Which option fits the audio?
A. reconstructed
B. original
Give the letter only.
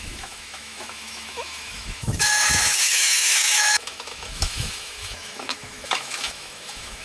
A